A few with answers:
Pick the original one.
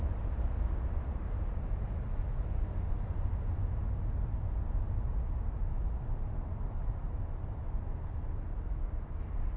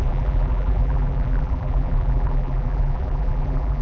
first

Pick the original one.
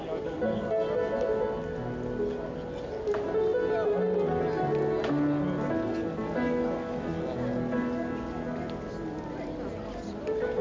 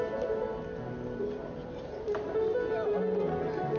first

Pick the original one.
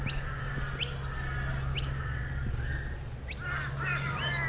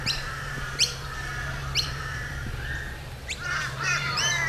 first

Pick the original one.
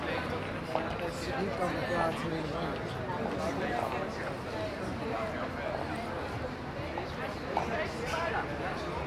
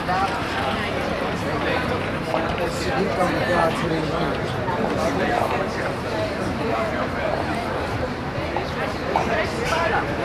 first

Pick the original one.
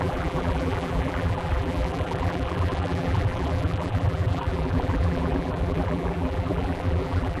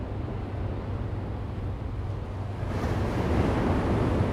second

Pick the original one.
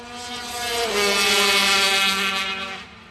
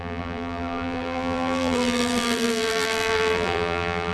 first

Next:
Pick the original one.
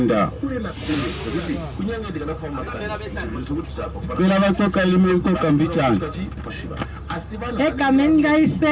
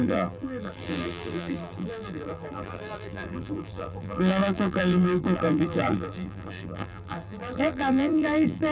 first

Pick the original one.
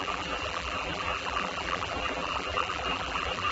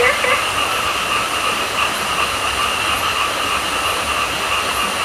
second